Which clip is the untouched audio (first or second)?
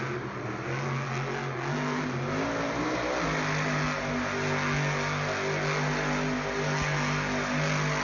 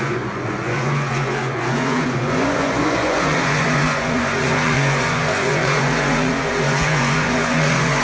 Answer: first